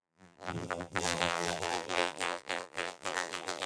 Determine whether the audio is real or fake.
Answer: fake